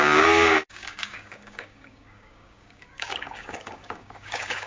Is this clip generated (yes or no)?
yes